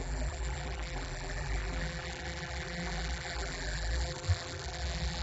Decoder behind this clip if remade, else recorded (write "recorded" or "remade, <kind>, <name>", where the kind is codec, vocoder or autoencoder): remade, vocoder, BigVGAN v2